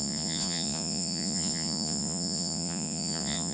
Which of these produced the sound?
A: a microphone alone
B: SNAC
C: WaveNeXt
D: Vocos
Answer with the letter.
D